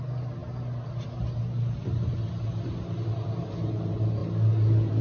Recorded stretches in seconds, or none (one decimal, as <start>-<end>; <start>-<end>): 0.0-5.0